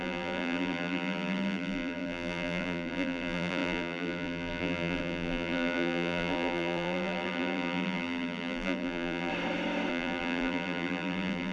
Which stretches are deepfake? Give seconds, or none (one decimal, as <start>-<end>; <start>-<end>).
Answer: 0.0-9.3; 9.9-11.5